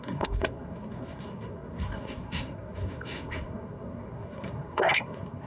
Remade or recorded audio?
remade